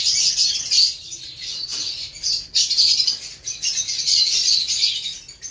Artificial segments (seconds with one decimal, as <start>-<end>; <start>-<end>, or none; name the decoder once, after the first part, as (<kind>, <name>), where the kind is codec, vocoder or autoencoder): 1.7-4.0 (vocoder, BigVGAN v2)